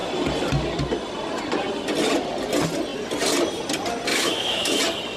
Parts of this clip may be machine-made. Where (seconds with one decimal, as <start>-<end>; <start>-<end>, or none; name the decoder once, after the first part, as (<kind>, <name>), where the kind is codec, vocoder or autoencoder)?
4.1-4.8 (autoencoder, DAC-VAE)